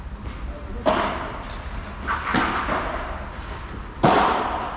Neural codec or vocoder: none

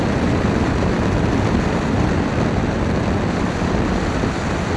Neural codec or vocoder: vocoder, BigVGAN v2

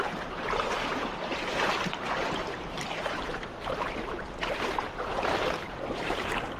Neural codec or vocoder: vocoder, BigVGAN v2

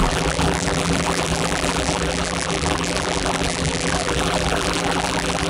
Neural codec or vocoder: vocoder, BigVGAN v2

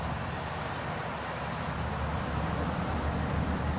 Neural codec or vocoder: none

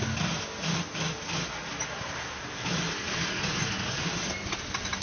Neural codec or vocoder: none